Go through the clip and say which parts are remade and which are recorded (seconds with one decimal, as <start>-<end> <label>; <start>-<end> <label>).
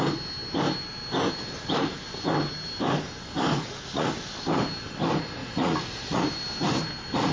0.0-3.5 recorded; 3.5-4.1 remade; 4.1-5.4 recorded; 5.4-6.2 remade; 6.2-7.3 recorded